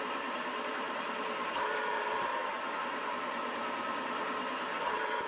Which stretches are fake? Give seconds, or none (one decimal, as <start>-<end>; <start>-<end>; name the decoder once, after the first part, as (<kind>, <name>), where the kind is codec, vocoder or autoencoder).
0.0-2.4 (vocoder, BigVGAN v2); 3.0-5.3